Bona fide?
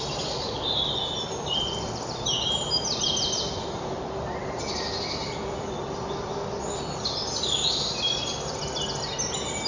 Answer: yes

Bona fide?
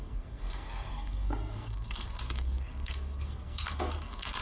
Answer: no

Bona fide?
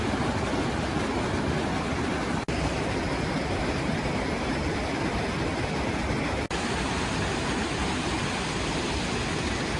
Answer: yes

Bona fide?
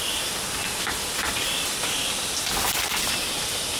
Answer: yes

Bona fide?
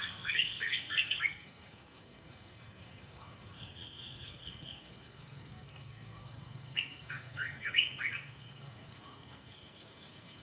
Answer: no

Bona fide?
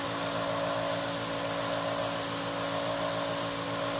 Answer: yes